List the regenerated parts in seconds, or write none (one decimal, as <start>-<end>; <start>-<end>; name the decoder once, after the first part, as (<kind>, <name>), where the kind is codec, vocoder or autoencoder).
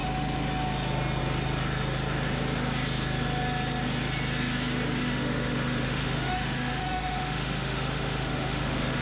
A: 5.0-9.0 (autoencoder, DAC-VAE)